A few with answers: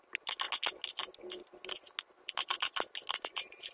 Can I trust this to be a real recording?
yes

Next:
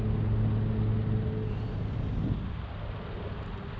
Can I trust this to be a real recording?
yes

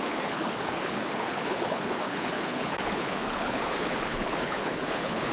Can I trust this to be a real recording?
no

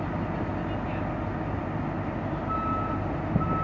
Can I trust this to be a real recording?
yes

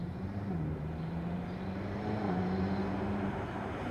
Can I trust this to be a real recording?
no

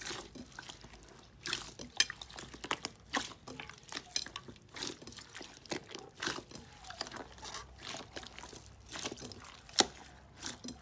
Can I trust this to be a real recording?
yes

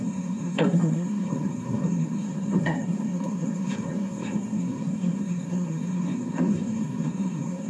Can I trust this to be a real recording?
no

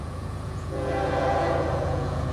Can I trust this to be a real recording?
no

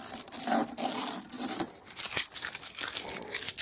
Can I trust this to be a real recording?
yes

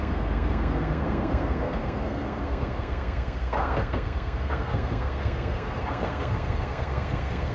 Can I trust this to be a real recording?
no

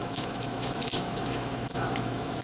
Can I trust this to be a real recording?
no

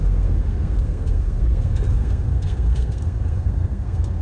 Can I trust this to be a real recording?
no